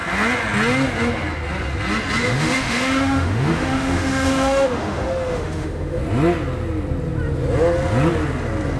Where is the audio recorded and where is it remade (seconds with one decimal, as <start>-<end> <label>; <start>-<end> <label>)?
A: 0.0-2.2 recorded; 2.2-6.0 remade; 6.0-8.8 recorded